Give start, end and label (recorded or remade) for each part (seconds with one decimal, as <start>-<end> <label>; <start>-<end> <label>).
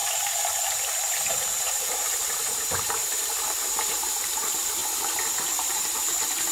0.0-1.2 recorded; 1.2-4.8 remade; 4.8-5.6 recorded; 5.6-6.5 remade